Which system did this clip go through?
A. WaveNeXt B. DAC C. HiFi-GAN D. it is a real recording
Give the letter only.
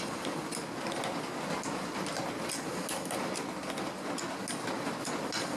D